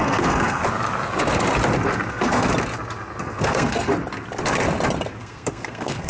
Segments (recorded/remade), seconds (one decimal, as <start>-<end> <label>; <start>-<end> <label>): 0.0-0.6 remade; 0.6-2.1 recorded; 2.1-2.5 remade; 2.5-3.2 recorded; 3.2-3.9 remade; 3.9-5.2 recorded; 5.2-6.1 remade